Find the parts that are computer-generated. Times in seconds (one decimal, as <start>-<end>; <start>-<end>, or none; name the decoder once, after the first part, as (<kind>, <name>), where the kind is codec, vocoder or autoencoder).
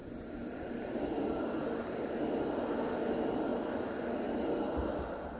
none